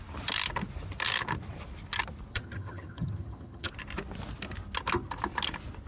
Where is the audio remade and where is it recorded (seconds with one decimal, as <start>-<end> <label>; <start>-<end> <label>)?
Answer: 0.0-2.3 recorded; 2.3-3.7 remade; 3.7-5.9 recorded